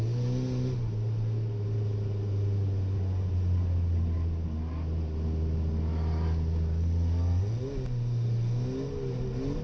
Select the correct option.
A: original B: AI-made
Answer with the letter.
A